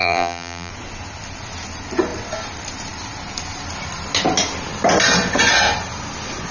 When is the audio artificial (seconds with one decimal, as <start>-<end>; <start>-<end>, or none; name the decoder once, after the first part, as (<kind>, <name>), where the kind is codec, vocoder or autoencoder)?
0.0-0.7 (vocoder, BigVGAN v2)